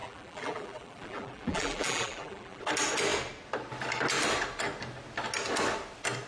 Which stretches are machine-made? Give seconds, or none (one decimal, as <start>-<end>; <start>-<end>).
0.0-2.6